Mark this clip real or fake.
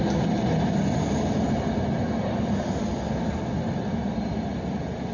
real